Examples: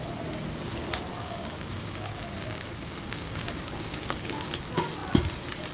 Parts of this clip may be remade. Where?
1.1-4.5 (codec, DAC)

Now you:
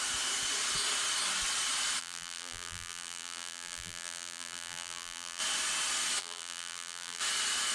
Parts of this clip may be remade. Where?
2.0-5.4 (vocoder, BigVGAN v2); 6.2-7.2

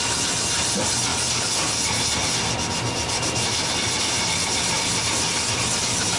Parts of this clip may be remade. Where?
none

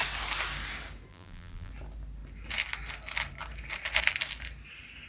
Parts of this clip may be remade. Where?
1.1-1.7 (vocoder, BigVGAN v2)

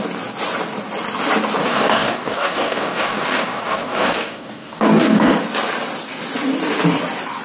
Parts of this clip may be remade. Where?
1.6-5.3 (codec, DAC)

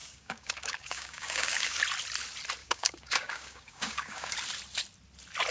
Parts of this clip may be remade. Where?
0.0-1.8 (codec, DAC); 2.6-4.3